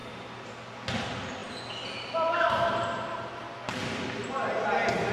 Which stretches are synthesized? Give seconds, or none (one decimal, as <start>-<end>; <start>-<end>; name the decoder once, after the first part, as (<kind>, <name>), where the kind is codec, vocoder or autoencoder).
0.0-0.7 (vocoder, BigVGAN v2); 1.4-3.4